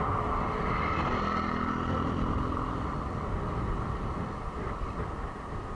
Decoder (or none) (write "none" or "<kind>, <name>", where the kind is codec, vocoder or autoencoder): none